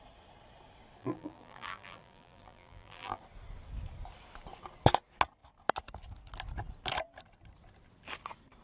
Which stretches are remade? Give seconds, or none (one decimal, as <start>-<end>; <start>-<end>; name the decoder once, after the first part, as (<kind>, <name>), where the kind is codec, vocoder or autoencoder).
1.0-3.2 (vocoder, BigVGAN v2)